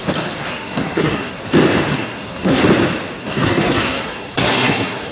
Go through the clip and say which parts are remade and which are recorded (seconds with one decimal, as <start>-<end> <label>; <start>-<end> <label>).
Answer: 0.0-0.5 recorded; 0.5-1.4 remade; 1.4-1.9 recorded; 1.9-2.6 remade; 2.6-3.2 recorded; 3.2-5.1 remade